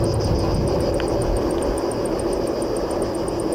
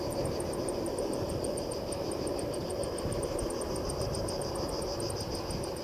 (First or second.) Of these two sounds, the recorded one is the first